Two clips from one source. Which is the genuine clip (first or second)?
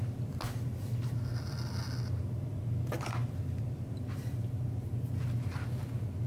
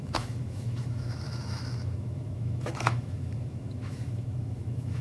first